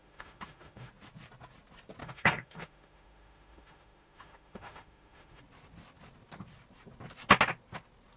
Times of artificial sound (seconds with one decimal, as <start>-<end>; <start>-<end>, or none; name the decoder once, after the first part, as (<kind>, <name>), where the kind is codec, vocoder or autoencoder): 0.0-0.9 (autoencoder, DAC-VAE); 2.0-5.4

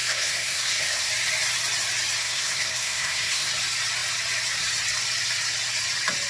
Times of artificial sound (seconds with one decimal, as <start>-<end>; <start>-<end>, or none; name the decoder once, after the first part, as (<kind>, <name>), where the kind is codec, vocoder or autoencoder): 0.0-1.1 (codec, SNAC); 2.2-3.5

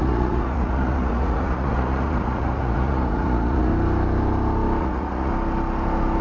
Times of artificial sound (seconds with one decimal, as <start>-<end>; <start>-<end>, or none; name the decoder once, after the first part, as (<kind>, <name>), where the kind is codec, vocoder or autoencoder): 0.0-3.7 (vocoder, Vocos); 4.8-5.3

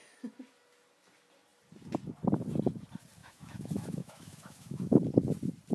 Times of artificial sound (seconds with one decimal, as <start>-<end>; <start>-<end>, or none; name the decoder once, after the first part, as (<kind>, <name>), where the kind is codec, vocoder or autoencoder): 3.2-5.0 (autoencoder, DAC-VAE)

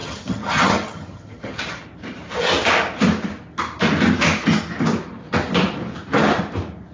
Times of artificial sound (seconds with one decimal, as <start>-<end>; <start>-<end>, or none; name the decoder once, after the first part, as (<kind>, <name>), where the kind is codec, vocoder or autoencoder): 0.0-1.6 (vocoder, HiFi-GAN)

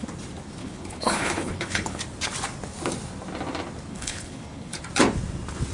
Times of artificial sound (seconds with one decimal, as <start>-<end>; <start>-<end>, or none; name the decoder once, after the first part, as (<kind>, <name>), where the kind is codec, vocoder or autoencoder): 0.6-2.0 (codec, HILCodec); 3.9-4.8

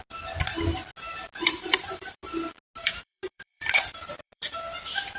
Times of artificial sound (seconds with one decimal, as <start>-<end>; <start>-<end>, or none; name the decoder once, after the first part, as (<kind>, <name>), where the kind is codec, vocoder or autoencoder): 1.4-2.3 (vocoder, BigVGAN v2); 2.8-4.6